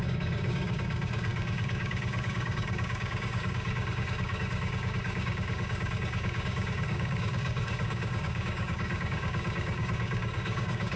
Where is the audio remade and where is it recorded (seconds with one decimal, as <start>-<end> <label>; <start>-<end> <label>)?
0.0-11.0 remade